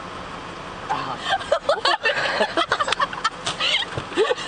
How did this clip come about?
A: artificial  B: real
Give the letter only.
B